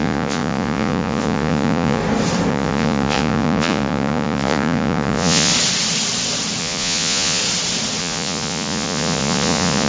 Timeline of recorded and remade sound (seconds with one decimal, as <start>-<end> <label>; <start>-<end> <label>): 0.0-2.0 remade; 2.0-2.5 recorded; 2.5-5.5 remade; 5.5-6.6 recorded; 6.6-7.4 remade; 7.4-8.0 recorded; 8.0-9.9 remade